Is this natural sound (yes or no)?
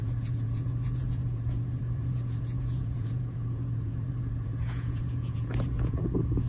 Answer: no